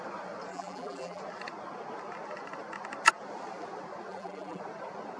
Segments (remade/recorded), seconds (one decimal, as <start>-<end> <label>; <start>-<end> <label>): 0.0-0.5 recorded; 0.5-1.2 remade; 1.2-4.1 recorded; 4.1-4.6 remade; 4.6-5.2 recorded